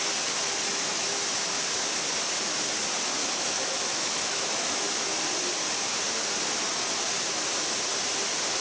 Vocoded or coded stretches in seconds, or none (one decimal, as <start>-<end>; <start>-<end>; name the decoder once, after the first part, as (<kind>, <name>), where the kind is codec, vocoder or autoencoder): 0.7-1.6 (autoencoder, DAC-VAE); 3.2-5.1